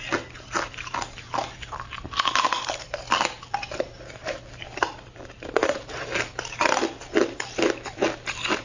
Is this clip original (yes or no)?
no